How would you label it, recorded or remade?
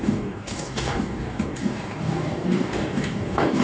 remade